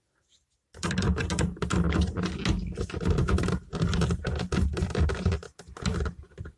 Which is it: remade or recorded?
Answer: recorded